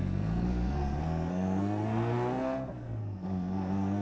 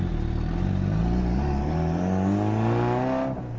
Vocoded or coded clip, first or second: first